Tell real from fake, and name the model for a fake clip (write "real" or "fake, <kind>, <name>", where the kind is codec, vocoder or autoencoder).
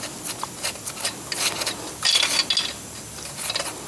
real